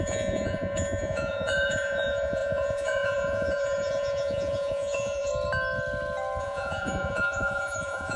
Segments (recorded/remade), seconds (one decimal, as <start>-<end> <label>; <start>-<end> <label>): 0.0-5.3 remade; 5.3-6.4 recorded; 6.4-8.2 remade